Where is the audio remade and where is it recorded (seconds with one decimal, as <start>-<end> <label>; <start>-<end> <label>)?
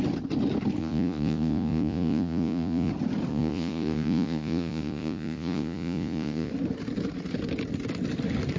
0.0-0.8 recorded; 0.8-2.9 remade; 2.9-3.3 recorded; 3.3-6.5 remade; 6.5-8.6 recorded